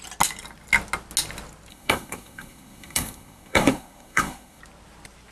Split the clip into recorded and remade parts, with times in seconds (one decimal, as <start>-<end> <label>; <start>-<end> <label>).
0.0-1.7 recorded; 1.7-4.6 remade; 4.6-5.3 recorded